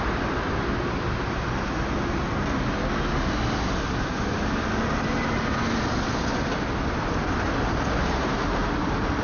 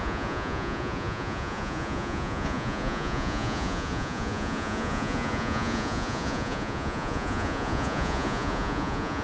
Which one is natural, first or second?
first